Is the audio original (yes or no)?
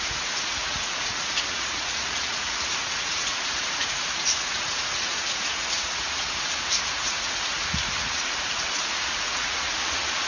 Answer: no